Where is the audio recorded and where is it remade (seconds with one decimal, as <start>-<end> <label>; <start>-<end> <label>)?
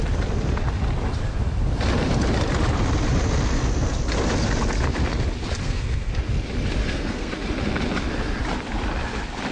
0.0-5.6 recorded; 5.6-6.1 remade; 6.1-6.8 recorded; 6.8-7.3 remade; 7.3-9.5 recorded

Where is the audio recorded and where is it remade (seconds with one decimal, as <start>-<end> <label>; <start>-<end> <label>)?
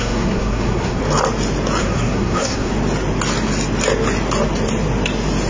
0.0-1.0 remade; 1.0-1.8 recorded; 1.8-2.7 remade; 2.7-5.5 recorded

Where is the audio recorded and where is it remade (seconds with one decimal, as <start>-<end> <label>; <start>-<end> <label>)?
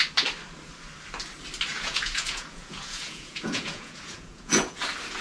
0.0-1.7 recorded; 1.7-4.8 remade; 4.8-5.2 recorded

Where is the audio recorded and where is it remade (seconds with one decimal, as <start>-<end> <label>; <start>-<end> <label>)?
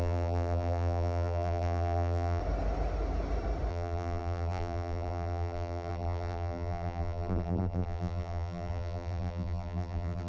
0.0-2.4 remade; 2.4-3.7 recorded; 3.7-10.3 remade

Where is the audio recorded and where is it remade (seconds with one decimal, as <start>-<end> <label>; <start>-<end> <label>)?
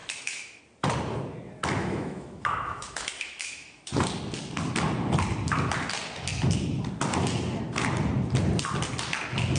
0.0-0.6 remade; 0.6-1.8 recorded; 1.8-3.9 remade; 3.9-9.6 recorded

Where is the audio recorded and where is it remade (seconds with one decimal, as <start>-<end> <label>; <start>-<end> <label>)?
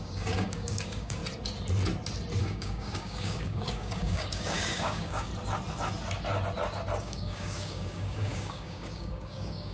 0.0-1.2 remade; 1.2-2.4 recorded; 2.4-5.3 remade; 5.3-7.0 recorded; 7.0-9.7 remade